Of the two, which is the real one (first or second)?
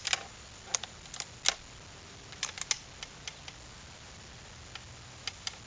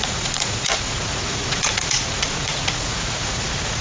first